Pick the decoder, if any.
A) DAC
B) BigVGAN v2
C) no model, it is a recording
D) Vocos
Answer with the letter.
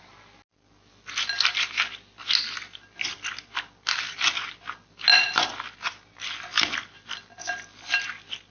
C